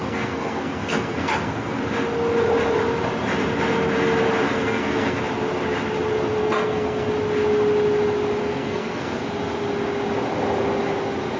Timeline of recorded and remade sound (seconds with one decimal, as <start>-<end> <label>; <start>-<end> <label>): 0.0-1.8 remade; 1.8-4.5 recorded; 4.5-5.2 remade; 5.2-6.4 recorded; 6.4-7.1 remade; 7.1-8.4 recorded; 8.4-9.2 remade; 9.2-11.4 recorded